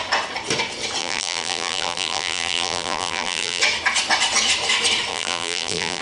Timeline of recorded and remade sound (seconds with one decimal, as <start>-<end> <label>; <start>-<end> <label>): 0.0-1.0 recorded; 1.0-3.6 remade; 3.6-5.1 recorded; 5.1-6.0 remade